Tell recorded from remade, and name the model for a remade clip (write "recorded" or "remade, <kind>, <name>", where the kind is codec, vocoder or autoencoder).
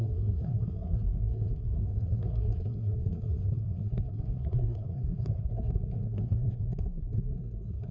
remade, codec, SNAC